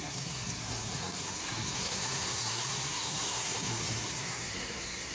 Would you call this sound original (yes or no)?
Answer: no